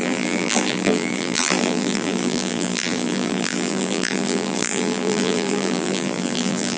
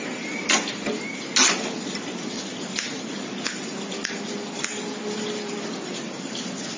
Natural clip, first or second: second